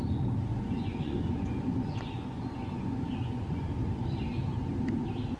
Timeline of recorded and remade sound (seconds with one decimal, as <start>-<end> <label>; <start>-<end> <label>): 0.0-0.5 recorded; 0.5-3.7 remade; 3.7-5.4 recorded